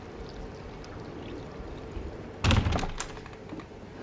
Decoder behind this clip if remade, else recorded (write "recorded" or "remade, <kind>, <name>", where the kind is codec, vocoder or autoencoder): recorded